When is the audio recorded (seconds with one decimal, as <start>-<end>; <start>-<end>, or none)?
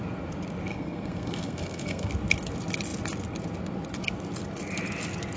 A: 0.0-0.7; 2.1-5.4